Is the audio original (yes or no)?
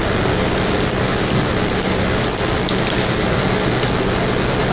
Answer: yes